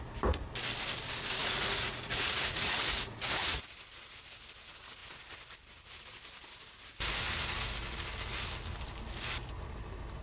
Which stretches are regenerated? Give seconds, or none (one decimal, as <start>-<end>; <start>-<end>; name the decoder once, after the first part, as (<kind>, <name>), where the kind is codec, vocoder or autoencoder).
1.4-3.6 (vocoder, Vocos)